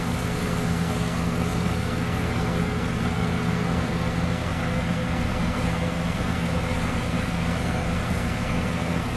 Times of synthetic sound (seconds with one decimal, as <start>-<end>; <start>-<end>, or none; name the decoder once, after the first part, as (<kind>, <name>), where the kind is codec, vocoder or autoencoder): 0.0-9.2 (codec, SNAC)

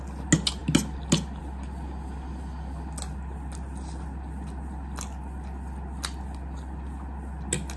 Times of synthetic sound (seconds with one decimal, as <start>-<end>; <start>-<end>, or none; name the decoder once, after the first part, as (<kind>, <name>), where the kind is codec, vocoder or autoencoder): none

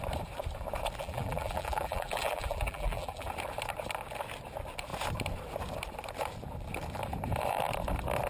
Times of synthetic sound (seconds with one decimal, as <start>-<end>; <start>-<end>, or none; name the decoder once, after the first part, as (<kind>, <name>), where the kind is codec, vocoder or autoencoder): 1.0-3.3 (vocoder, BigVGAN v2)